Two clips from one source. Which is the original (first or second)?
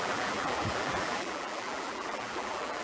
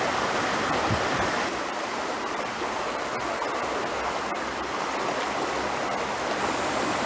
second